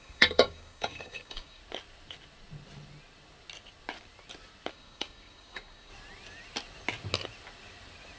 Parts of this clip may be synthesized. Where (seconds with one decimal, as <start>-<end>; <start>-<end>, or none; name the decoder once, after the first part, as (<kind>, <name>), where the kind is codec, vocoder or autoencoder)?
0.0-1.6 (codec, DAC); 4.7-5.9